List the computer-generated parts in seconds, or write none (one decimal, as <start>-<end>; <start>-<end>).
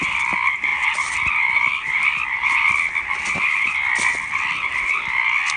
none